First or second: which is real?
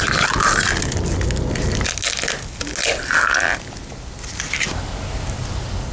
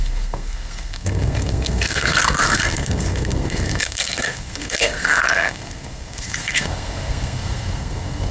first